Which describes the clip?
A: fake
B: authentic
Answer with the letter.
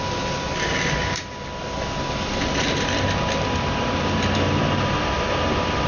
B